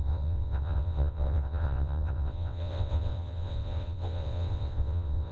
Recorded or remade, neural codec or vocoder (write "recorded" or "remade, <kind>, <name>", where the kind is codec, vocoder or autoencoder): remade, vocoder, WaveNeXt